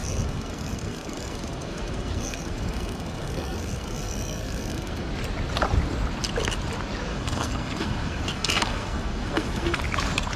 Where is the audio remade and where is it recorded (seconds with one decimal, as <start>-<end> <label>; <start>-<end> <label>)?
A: 0.0-5.1 remade; 5.1-7.1 recorded; 7.1-9.8 remade; 9.8-10.4 recorded